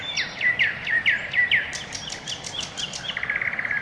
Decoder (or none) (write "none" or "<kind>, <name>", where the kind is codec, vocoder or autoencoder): none